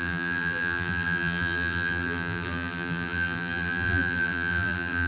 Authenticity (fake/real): fake